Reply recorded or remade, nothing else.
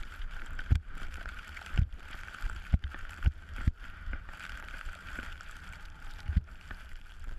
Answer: remade